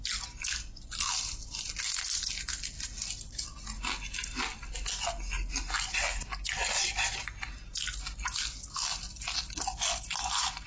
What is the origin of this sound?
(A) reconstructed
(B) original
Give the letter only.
B